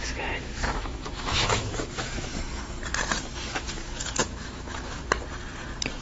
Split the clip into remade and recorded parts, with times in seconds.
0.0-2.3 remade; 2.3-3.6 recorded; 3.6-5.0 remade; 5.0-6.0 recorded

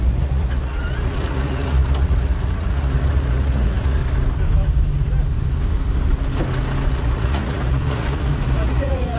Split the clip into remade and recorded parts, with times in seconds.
0.0-4.0 remade; 4.0-6.9 recorded; 6.9-9.2 remade

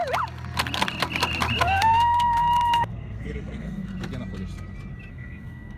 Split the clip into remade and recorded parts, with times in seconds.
0.0-1.6 recorded; 1.6-3.9 remade; 3.9-5.1 recorded; 5.1-5.8 remade

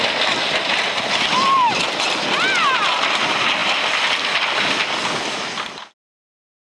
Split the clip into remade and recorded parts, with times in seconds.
0.0-6.6 recorded

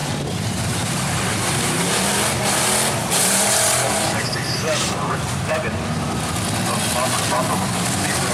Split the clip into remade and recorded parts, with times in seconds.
0.0-1.8 remade; 1.8-3.0 recorded; 3.0-5.5 remade; 5.5-8.3 recorded

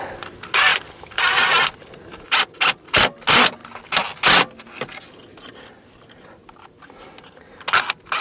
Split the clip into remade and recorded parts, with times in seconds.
0.0-8.2 recorded